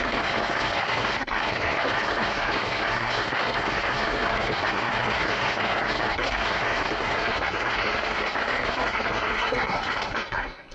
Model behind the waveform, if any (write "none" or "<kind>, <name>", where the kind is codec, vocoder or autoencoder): codec, SNAC